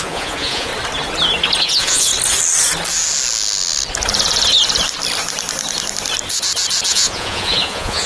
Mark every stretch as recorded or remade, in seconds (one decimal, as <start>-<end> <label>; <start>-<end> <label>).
0.0-0.7 remade; 0.7-1.6 recorded; 1.6-2.1 remade; 2.1-6.9 recorded; 6.9-8.1 remade